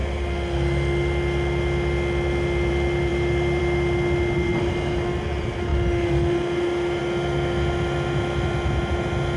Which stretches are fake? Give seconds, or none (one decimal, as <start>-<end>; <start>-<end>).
none